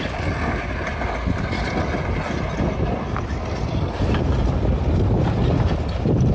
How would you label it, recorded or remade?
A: recorded